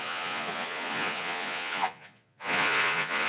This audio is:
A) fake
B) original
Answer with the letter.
A